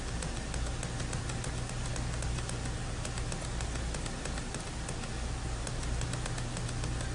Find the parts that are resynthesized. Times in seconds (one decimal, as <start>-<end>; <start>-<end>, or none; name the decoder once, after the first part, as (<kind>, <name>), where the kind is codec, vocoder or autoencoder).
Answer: none